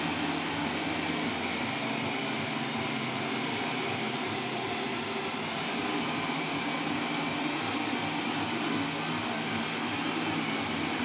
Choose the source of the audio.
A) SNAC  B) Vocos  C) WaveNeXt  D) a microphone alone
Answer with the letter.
D